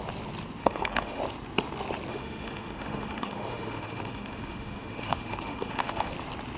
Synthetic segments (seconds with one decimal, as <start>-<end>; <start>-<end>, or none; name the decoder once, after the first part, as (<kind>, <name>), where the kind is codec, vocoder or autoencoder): 0.6-1.2 (autoencoder, DAC-VAE); 2.1-6.1